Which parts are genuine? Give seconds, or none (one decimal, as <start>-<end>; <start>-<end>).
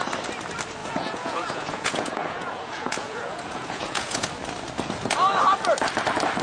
0.0-0.8; 4.3-6.4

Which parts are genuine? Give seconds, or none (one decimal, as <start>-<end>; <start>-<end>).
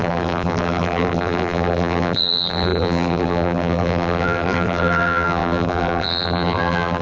none